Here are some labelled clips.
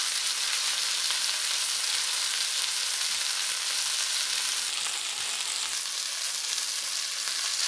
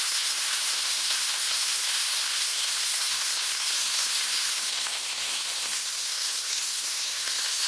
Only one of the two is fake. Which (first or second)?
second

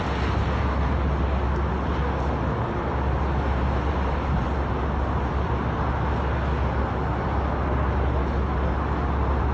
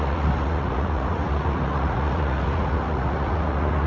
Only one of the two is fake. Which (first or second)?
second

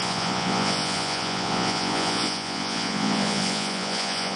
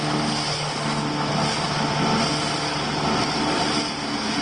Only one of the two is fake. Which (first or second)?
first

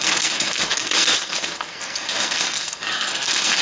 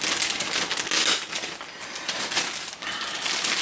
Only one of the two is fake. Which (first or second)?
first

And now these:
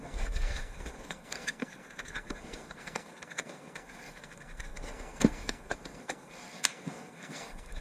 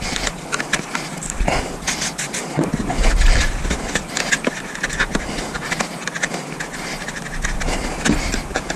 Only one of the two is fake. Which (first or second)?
first